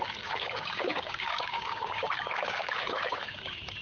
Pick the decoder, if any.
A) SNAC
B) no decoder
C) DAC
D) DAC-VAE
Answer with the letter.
C